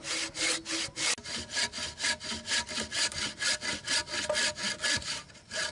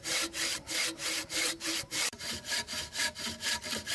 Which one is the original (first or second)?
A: first